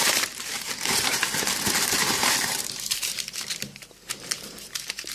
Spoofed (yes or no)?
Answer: yes